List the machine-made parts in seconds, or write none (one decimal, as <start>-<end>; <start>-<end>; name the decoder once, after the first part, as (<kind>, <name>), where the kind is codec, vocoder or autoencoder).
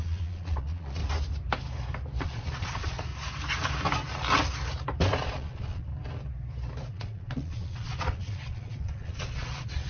0.0-1.0 (vocoder, Vocos); 2.2-3.1; 5.2-5.9; 6.9-9.9